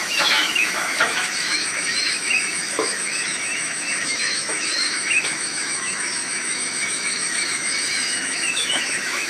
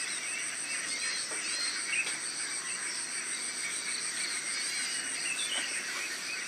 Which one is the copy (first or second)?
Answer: first